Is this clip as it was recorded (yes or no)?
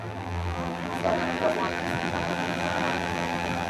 no